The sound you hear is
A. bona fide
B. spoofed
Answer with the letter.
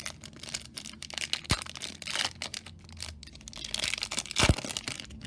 A